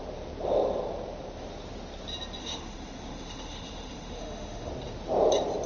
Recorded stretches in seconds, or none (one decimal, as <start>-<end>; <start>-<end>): 0.0-2.4; 4.7-5.7